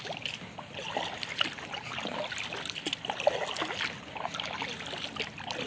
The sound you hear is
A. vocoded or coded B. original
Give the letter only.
B